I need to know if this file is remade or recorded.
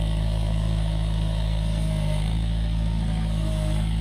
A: remade